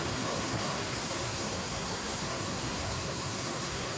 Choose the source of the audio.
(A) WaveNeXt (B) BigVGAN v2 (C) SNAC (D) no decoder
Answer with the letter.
C